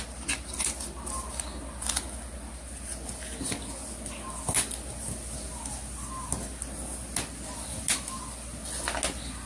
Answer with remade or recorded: recorded